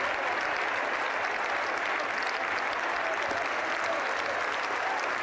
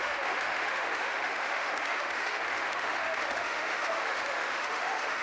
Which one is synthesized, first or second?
second